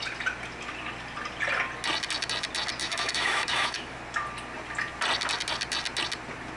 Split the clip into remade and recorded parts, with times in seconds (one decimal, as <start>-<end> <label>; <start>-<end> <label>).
0.0-2.8 recorded; 2.8-4.0 remade; 4.0-6.6 recorded

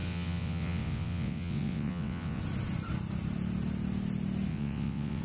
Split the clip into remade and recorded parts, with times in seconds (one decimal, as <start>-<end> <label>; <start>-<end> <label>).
0.0-2.4 remade; 2.4-4.5 recorded; 4.5-5.2 remade